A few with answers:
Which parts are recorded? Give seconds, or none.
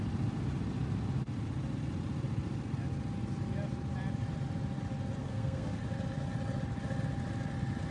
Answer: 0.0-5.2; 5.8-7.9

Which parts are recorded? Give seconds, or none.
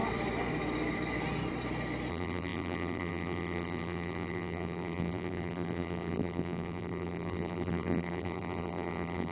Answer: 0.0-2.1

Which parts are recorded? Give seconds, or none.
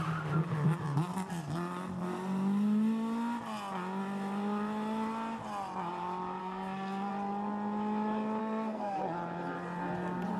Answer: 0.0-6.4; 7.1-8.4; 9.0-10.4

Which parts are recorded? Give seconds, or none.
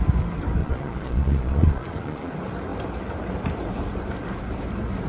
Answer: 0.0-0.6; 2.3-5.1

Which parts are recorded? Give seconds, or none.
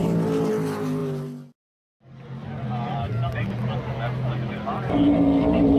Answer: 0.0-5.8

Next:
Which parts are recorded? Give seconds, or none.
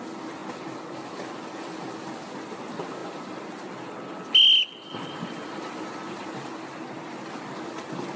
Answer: 0.0-8.2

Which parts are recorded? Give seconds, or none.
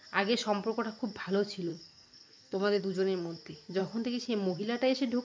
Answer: 0.0-1.7; 2.8-5.2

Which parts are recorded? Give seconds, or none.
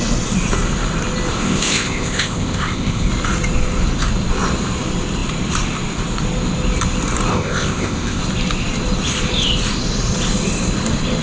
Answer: 0.0-1.3; 3.1-7.3; 8.2-11.2